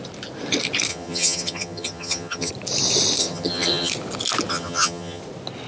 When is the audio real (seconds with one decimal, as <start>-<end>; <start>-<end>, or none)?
0.0-0.9; 2.5-3.2; 3.9-4.5; 5.2-5.7